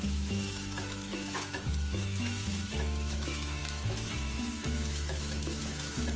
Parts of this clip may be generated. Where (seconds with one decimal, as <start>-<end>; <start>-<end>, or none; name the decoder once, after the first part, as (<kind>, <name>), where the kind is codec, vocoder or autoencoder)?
0.0-6.2 (autoencoder, DAC-VAE)